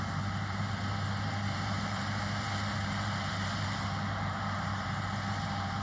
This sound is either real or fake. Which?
fake